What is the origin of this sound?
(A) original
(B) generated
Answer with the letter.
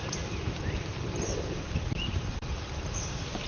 B